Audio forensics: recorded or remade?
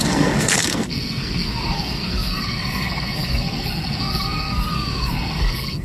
remade